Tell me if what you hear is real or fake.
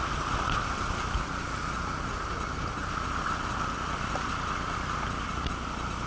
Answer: real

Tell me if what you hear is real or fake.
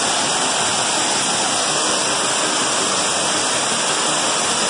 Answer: real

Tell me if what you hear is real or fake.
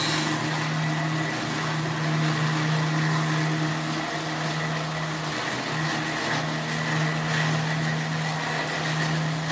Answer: real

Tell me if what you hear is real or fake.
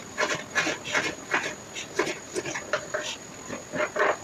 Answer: real